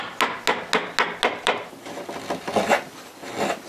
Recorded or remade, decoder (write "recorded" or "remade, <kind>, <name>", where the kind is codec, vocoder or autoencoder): recorded